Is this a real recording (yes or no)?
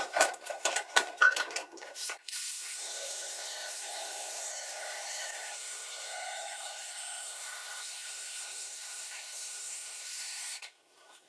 no